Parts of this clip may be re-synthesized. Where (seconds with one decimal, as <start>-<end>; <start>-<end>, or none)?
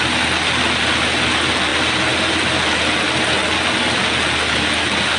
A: none